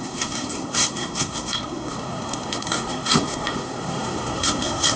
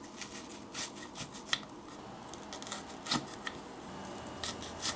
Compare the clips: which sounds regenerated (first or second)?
first